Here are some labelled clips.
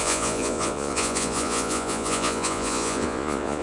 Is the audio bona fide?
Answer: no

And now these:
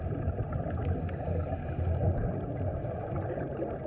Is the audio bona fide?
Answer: yes